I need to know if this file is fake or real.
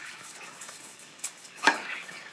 fake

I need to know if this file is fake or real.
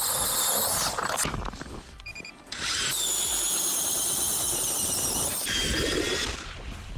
real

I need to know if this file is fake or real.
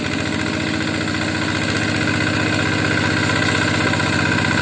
real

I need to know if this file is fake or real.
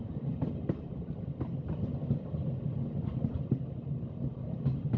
real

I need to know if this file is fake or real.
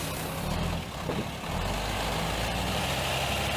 real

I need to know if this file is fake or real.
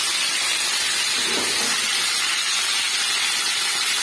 real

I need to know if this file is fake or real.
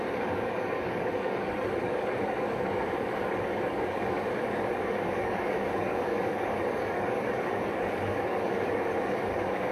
fake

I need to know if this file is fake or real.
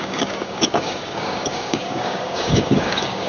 fake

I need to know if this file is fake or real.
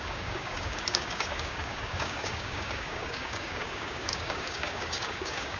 fake